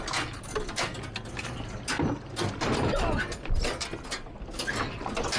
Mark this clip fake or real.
real